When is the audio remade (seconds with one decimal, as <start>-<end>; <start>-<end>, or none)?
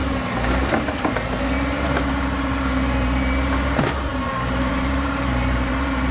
0.0-6.1